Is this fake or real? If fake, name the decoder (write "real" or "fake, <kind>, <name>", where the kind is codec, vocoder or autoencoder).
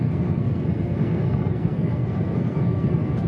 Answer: fake, codec, SNAC